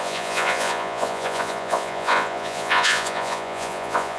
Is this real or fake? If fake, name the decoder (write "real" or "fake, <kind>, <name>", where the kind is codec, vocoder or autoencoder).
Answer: fake, vocoder, Vocos